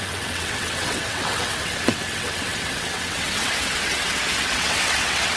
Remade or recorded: remade